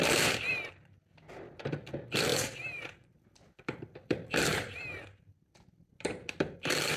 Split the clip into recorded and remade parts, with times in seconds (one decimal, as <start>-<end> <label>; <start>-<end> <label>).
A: 0.0-7.0 remade